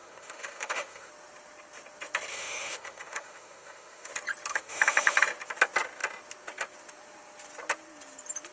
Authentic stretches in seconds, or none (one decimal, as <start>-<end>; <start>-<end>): 1.1-2.3; 4.1-4.5; 5.2-8.5